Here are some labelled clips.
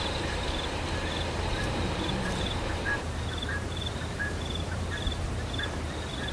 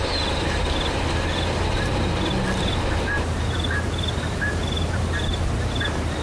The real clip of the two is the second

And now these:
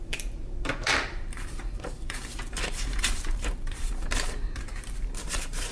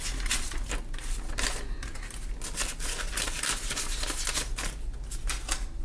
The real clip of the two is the second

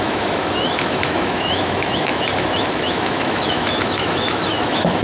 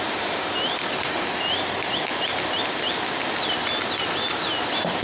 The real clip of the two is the second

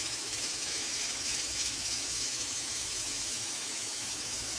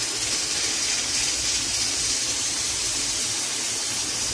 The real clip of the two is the second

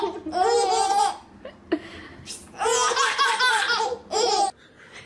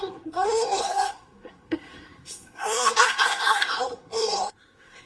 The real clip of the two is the first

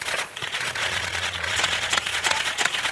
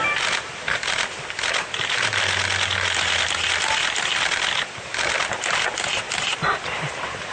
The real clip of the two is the second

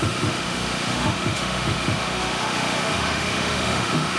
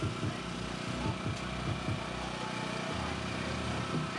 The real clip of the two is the second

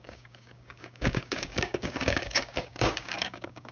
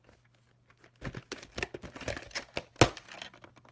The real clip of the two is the second